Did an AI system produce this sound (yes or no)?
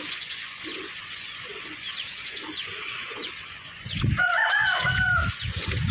yes